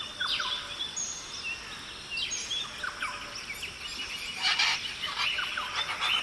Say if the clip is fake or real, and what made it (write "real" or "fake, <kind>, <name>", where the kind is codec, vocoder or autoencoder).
real